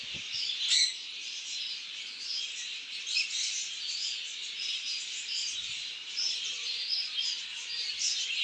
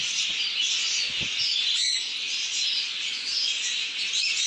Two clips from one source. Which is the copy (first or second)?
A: first